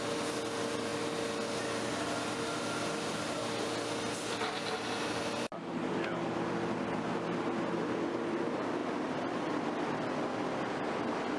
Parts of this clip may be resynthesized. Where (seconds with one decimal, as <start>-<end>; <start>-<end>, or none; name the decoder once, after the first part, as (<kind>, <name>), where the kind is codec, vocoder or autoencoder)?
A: none